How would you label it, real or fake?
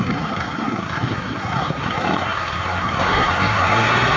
fake